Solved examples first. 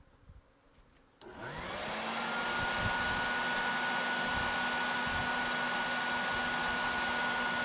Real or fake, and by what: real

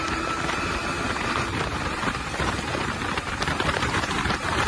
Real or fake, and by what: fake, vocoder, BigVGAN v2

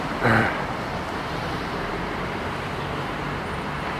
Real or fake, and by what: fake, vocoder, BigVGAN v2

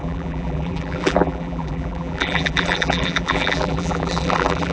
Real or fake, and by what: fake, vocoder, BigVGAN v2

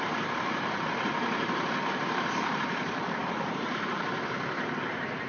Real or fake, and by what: fake, vocoder, BigVGAN v2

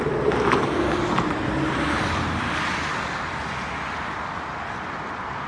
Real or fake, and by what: real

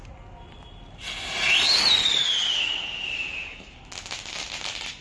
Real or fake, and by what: real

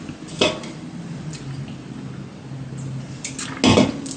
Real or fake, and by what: real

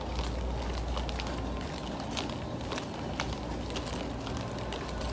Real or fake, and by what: real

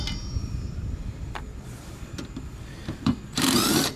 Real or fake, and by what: fake, vocoder, BigVGAN v2